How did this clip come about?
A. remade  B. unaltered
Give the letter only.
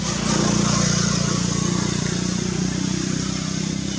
B